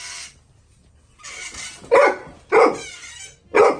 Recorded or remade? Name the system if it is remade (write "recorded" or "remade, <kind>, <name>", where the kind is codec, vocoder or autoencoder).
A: recorded